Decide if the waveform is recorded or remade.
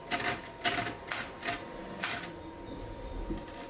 recorded